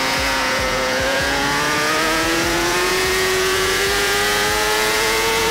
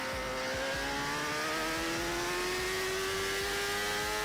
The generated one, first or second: first